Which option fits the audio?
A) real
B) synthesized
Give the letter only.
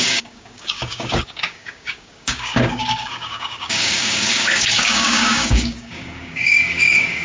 B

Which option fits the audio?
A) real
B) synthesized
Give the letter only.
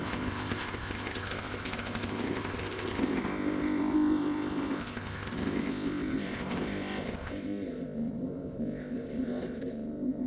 B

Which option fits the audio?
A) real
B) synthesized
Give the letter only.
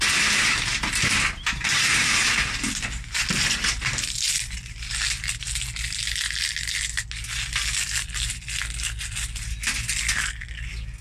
A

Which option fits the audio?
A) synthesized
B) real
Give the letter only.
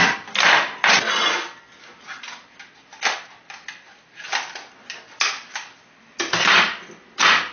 B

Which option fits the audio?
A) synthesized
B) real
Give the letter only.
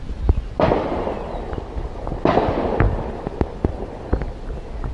B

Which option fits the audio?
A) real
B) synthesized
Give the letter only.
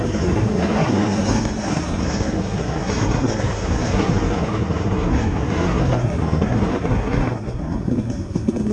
B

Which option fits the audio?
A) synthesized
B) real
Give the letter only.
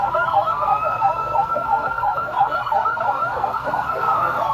A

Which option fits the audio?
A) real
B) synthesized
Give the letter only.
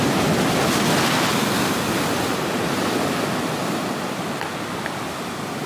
A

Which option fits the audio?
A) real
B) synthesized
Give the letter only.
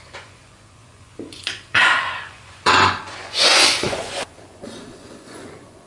B